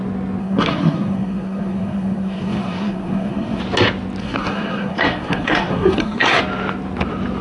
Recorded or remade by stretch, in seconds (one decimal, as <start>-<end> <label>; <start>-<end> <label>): 0.0-0.4 recorded; 0.4-3.6 remade; 3.6-4.2 recorded; 4.2-6.4 remade; 6.4-7.4 recorded